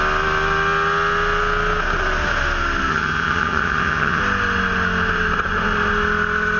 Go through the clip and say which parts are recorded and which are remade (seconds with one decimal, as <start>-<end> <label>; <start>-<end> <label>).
0.0-2.9 recorded; 2.9-4.2 remade; 4.2-6.6 recorded